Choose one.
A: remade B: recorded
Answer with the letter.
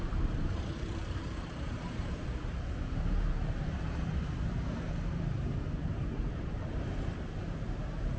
A